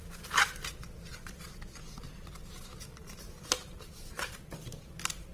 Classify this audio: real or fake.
real